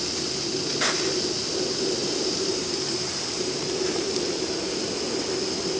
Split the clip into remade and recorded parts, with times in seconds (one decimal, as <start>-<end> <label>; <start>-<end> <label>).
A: 0.0-2.0 recorded; 2.0-4.8 remade; 4.8-5.8 recorded

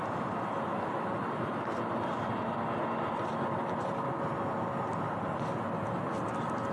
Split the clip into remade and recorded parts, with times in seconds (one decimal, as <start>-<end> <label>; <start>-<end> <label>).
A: 0.0-6.7 recorded

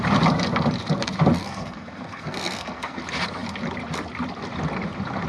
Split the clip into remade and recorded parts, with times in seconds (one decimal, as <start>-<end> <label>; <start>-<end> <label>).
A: 0.0-1.4 recorded; 1.4-3.0 remade; 3.0-5.3 recorded